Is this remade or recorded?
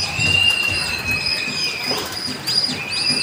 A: recorded